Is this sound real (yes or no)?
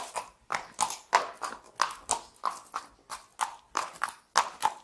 yes